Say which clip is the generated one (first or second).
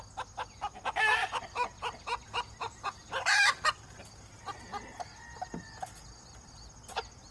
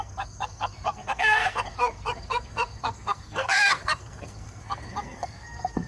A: second